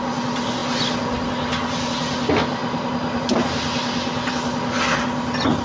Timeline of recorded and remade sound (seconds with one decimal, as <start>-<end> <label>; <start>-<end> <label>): 0.0-5.6 recorded